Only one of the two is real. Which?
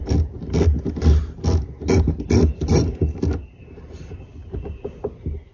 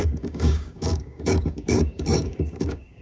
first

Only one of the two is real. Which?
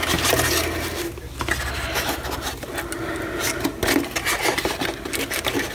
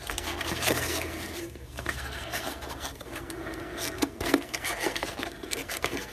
first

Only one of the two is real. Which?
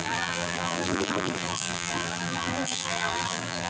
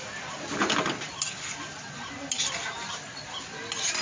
second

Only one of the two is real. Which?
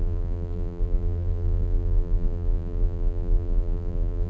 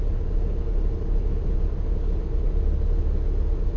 second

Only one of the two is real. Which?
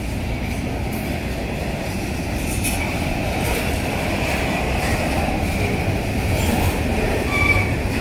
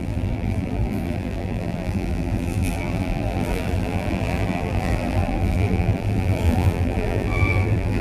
first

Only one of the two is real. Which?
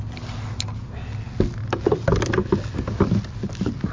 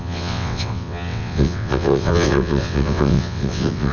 first